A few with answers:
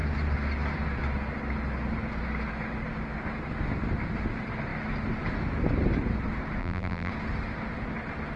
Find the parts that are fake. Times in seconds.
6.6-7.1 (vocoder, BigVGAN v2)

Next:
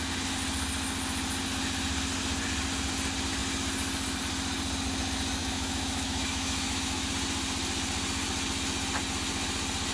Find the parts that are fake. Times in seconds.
5.4-7.1 (autoencoder, DAC-VAE)

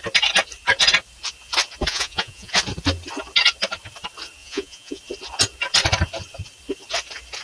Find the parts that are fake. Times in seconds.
1.9-2.5 (vocoder, Vocos); 4.4-5.0

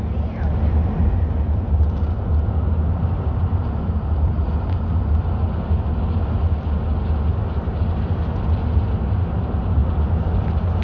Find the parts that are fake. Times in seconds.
none